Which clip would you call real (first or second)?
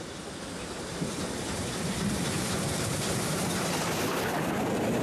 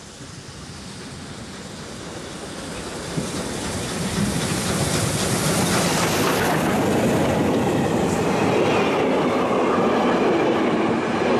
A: second